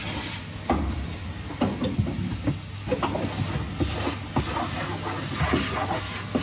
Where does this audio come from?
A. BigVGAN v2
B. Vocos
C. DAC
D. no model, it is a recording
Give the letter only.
D